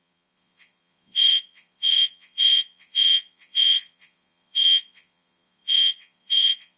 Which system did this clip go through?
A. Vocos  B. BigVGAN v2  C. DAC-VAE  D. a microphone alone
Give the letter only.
A